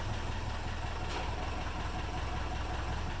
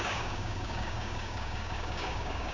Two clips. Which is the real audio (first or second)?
first